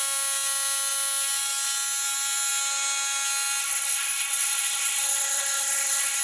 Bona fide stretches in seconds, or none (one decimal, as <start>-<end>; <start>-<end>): 0.0-3.6